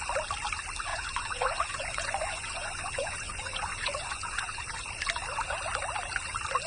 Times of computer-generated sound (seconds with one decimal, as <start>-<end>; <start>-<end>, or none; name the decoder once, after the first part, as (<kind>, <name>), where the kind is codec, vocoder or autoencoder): 0.9-4.9 (vocoder, Vocos)